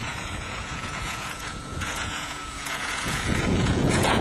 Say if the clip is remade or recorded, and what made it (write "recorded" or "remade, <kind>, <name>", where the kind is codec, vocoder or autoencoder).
remade, vocoder, Vocos